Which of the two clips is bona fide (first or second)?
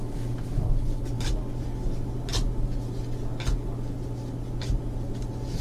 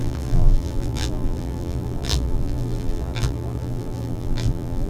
first